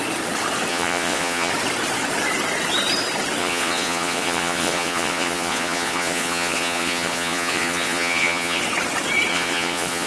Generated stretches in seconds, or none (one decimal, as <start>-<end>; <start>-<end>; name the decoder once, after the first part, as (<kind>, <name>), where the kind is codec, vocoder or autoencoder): 0.7-1.5 (vocoder, Vocos); 3.4-8.6; 9.3-10.1